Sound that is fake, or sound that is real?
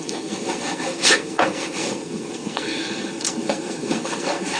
fake